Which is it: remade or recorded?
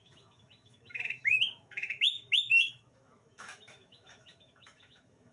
remade